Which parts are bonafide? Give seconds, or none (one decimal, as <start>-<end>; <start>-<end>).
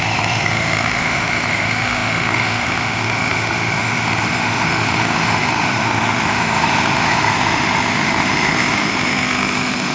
none